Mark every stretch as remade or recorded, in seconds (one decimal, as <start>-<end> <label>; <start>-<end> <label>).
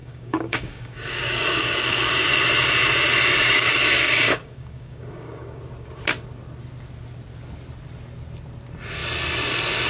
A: 0.0-2.1 remade; 2.1-3.6 recorded; 3.6-5.6 remade; 5.6-9.9 recorded